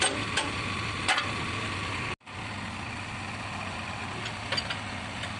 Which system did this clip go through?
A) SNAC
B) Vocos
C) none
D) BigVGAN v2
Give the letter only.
C